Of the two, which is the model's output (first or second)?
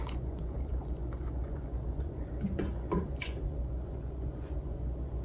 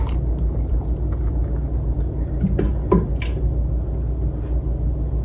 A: first